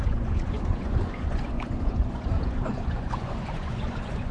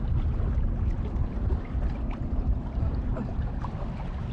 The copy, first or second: first